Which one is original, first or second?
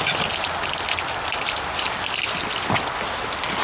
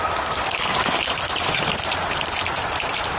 first